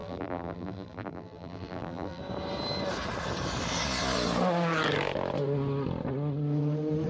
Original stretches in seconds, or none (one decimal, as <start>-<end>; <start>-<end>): 2.2-7.1